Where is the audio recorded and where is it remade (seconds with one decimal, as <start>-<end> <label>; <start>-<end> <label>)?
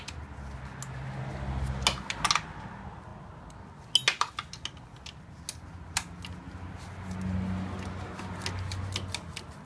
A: 0.0-9.7 recorded